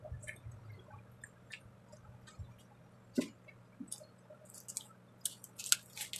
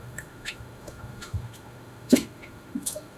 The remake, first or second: second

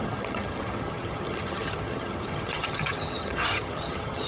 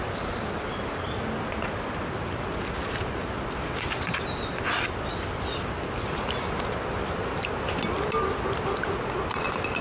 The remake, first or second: first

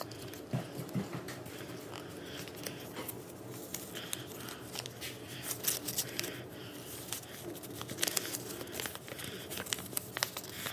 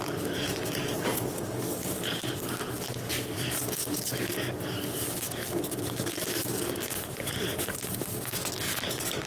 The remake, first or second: second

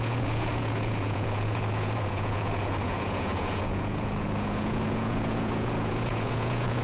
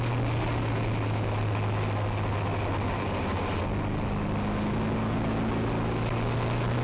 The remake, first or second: first